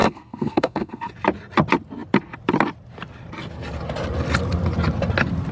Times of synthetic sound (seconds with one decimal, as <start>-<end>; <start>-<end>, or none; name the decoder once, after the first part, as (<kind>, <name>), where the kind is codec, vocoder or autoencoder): 0.0-1.1 (codec, SNAC)